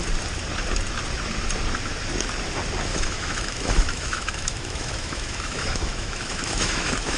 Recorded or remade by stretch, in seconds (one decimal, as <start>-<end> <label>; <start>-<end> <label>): 0.0-2.9 recorded; 2.9-7.2 remade